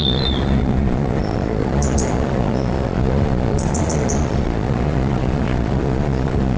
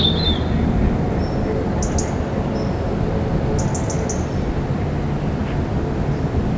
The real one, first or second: second